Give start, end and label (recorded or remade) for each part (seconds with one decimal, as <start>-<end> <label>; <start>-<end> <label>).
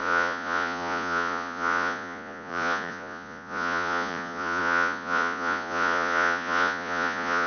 0.0-7.5 remade